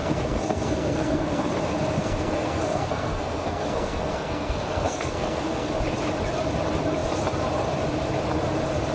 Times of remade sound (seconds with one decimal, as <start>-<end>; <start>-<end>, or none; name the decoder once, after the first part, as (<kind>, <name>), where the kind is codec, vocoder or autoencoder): 0.0-1.5 (codec, SNAC); 2.0-5.7